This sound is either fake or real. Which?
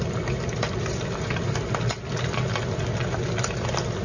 real